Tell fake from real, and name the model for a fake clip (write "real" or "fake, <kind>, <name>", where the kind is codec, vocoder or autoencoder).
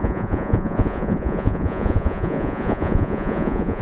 fake, vocoder, Vocos